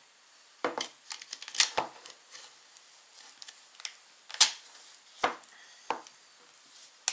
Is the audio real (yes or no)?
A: yes